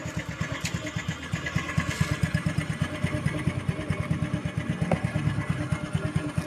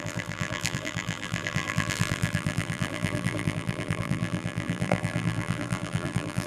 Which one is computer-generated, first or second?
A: second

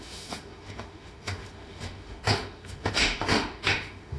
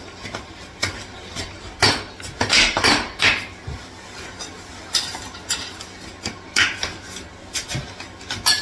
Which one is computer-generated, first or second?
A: first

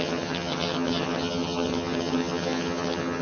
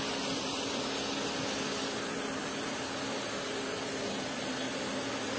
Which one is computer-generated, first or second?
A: first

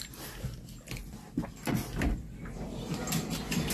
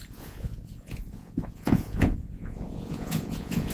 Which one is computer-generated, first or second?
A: second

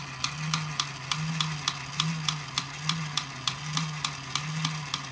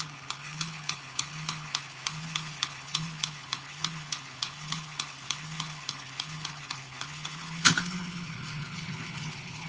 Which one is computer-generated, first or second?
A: second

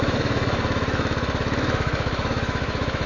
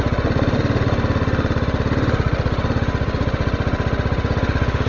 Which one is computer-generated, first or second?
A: first